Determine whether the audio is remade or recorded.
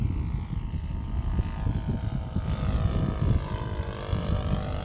recorded